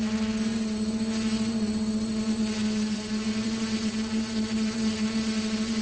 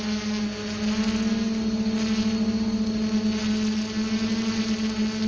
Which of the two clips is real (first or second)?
second